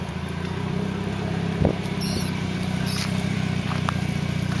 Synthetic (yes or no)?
yes